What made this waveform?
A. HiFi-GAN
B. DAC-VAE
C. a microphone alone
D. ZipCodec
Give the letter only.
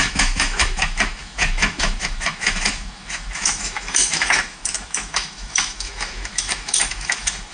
B